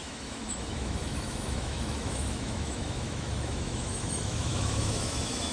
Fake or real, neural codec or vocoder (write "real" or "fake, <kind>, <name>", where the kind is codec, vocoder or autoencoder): fake, autoencoder, DAC-VAE